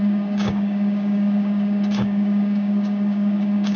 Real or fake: fake